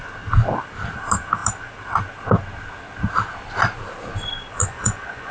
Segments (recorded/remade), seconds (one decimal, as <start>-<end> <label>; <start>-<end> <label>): 0.0-4.6 recorded; 4.6-5.3 remade